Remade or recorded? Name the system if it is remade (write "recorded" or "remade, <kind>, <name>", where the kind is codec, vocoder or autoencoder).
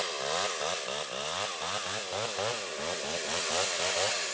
recorded